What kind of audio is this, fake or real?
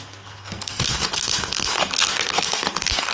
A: fake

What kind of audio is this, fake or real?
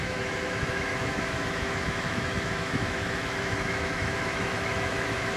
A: fake